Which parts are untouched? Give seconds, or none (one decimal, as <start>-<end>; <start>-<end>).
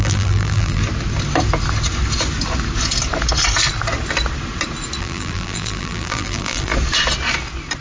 0.8-5.0; 6.7-7.8